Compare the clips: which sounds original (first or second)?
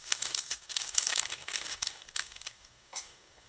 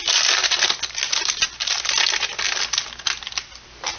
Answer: second